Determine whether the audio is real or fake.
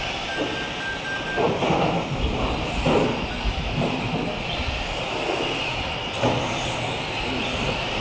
real